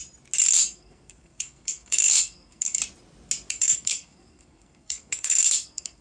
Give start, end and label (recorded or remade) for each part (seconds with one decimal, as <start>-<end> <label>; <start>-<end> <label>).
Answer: 0.0-0.6 recorded; 0.6-2.8 remade; 2.8-3.5 recorded; 3.5-6.0 remade